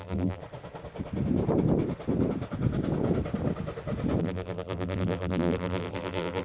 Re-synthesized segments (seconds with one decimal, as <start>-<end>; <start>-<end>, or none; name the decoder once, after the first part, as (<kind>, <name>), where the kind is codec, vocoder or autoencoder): 0.0-0.4 (vocoder, BigVGAN v2); 4.2-6.4

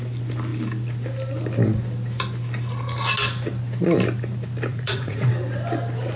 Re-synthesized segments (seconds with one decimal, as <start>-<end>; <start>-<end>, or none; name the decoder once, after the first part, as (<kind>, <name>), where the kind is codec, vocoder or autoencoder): 4.7-5.3 (vocoder, Vocos)

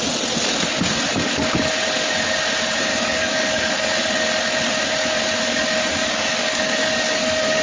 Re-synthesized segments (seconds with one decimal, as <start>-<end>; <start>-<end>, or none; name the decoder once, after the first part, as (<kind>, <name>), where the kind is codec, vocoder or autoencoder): 1.1-1.7 (codec, DAC); 2.9-4.0; 5.9-7.6

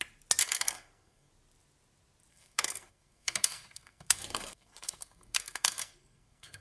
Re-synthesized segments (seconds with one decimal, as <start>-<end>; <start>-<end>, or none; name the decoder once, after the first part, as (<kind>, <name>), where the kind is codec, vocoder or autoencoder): 0.4-1.3 (codec, SNAC); 2.3-6.6

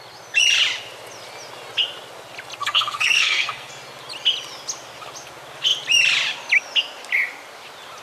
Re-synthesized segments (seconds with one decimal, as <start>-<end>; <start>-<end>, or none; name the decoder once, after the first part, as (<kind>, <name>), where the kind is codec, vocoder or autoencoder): 2.6-3.7 (codec, SNAC)

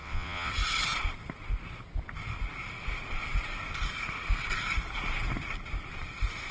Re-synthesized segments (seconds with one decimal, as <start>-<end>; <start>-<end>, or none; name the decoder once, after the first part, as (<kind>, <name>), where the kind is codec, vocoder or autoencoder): 0.0-0.5 (vocoder, WaveNeXt)

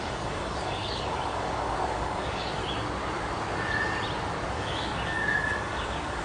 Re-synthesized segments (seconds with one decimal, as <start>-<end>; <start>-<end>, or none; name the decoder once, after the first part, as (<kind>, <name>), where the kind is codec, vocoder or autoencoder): 0.0-2.6 (codec, DAC); 4.5-6.2

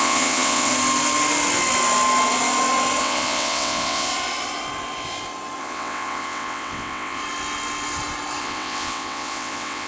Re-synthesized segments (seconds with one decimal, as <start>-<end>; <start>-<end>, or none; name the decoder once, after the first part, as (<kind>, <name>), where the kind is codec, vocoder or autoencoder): 0.0-0.7 (vocoder, WaveNeXt); 3.0-4.1; 5.6-7.2; 8.4-9.9